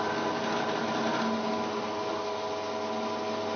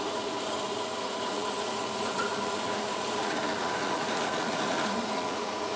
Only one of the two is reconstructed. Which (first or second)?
second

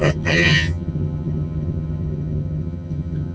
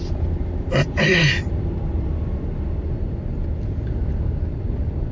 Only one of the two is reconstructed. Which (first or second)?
first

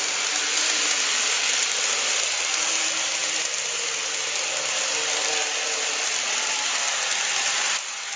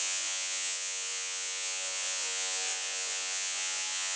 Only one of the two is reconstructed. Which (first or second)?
second